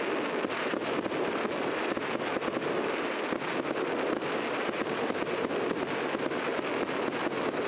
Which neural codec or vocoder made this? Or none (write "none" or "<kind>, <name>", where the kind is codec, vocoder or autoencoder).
none